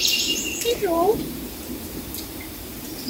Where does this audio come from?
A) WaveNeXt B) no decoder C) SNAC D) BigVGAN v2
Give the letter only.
D